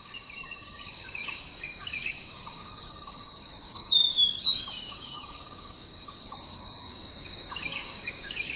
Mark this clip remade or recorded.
remade